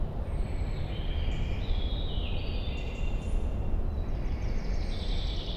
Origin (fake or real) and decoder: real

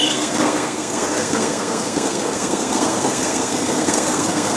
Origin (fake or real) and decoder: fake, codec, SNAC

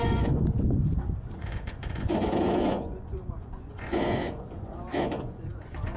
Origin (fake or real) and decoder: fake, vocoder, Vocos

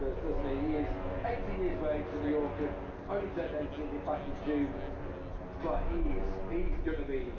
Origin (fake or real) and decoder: real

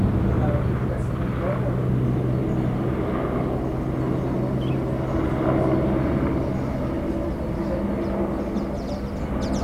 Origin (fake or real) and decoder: real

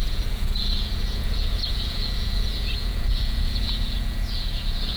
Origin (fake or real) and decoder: fake, vocoder, Vocos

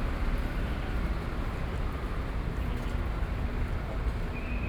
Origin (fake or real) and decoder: real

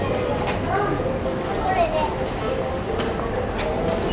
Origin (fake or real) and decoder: real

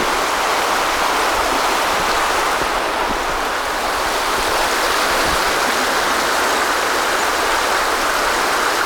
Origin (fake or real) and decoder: real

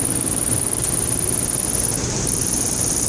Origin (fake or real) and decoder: fake, vocoder, BigVGAN v2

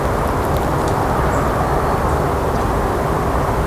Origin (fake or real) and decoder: real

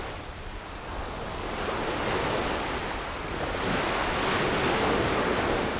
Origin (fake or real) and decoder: real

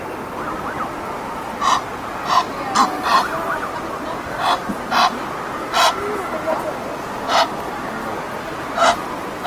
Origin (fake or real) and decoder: real